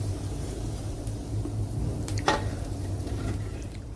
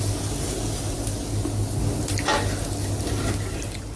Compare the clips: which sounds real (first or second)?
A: second